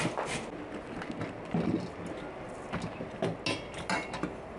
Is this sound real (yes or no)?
yes